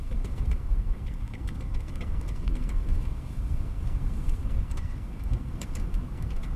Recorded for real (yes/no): no